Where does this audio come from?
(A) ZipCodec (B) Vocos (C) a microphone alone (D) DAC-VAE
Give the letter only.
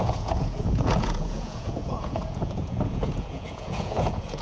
B